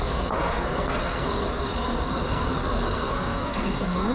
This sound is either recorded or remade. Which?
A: remade